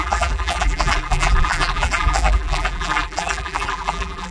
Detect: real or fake fake